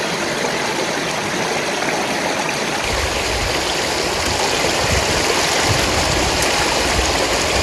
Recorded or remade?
recorded